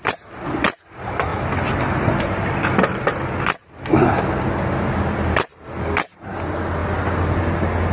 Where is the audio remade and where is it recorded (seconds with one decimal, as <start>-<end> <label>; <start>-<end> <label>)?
0.0-7.9 recorded